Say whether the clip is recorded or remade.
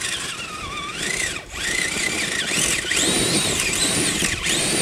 remade